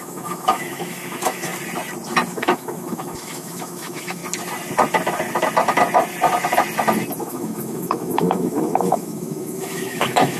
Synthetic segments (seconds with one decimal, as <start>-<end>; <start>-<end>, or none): 0.0-1.5; 2.3-4.2; 7.2-10.4